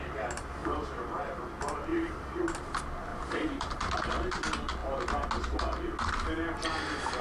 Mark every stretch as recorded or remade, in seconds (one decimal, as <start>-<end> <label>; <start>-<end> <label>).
0.0-0.6 recorded; 0.6-1.5 remade; 1.5-1.9 recorded; 1.9-2.4 remade; 2.4-3.1 recorded; 3.1-3.9 remade; 3.9-7.2 recorded

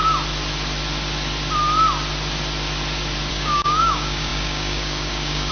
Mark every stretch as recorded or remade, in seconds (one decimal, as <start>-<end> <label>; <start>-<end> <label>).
0.0-3.3 recorded; 3.3-5.5 remade

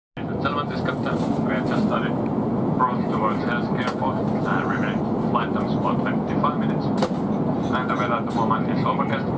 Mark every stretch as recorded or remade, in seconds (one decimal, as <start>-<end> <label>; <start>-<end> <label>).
0.0-9.4 recorded

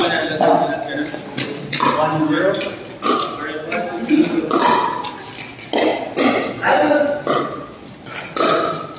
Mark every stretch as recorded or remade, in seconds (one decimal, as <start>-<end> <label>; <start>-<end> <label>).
0.0-9.0 recorded

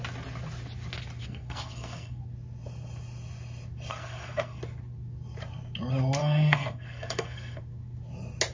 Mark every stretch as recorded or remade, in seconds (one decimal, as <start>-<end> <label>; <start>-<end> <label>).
0.0-1.2 recorded; 1.2-2.2 remade; 2.2-3.9 recorded; 3.9-4.6 remade; 4.6-6.2 recorded; 6.2-7.6 remade; 7.6-8.5 recorded

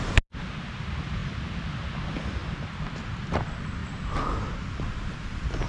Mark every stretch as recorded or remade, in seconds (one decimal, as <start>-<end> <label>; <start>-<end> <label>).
0.0-5.7 recorded

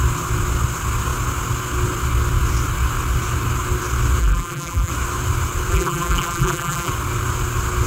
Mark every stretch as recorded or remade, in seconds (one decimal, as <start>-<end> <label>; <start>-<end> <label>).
0.0-4.2 recorded; 4.2-4.9 remade; 4.9-5.7 recorded; 5.7-6.9 remade; 6.9-7.9 recorded

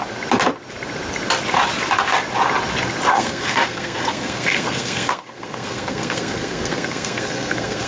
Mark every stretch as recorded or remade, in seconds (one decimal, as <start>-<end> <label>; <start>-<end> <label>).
0.0-3.1 recorded; 3.1-7.9 remade